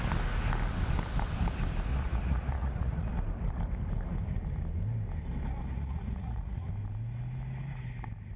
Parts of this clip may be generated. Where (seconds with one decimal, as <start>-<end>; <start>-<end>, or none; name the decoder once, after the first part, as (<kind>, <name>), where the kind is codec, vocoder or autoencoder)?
1.9-3.1 (vocoder, Vocos); 5.6-6.7